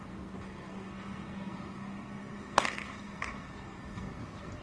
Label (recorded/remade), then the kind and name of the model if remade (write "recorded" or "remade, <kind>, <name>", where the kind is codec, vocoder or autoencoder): remade, codec, SNAC